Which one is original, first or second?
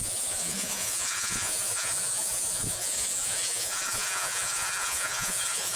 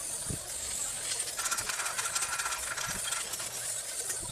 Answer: second